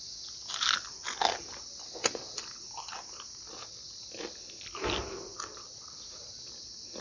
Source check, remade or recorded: recorded